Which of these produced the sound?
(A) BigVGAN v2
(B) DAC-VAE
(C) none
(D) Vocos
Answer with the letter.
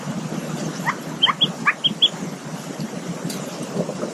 C